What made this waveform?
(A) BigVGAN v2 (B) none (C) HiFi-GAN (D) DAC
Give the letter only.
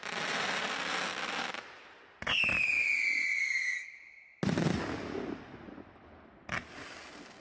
B